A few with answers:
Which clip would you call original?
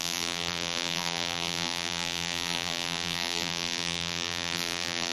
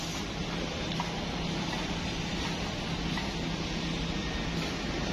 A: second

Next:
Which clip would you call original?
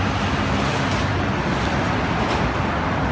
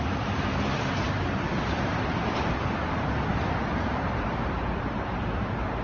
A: first